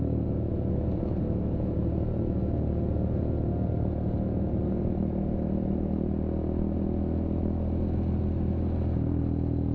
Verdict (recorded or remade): recorded